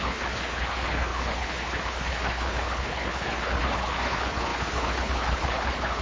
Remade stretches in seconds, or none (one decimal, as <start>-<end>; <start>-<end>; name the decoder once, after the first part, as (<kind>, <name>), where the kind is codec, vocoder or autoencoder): 0.0-6.0 (codec, HILCodec)